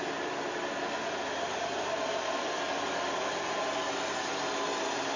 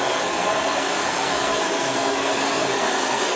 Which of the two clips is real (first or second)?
first